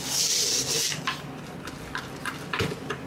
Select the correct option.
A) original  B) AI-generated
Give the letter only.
A